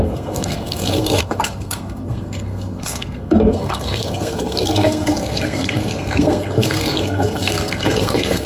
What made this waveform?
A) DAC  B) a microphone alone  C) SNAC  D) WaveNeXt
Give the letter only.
C